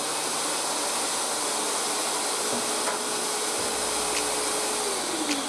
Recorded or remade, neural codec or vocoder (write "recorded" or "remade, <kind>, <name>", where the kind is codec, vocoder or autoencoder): recorded